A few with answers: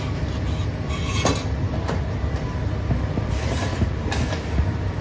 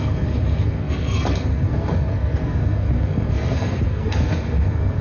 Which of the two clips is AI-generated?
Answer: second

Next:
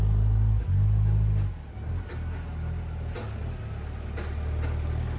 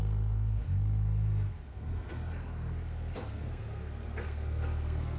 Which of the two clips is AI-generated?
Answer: second